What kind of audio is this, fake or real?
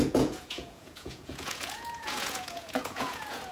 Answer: fake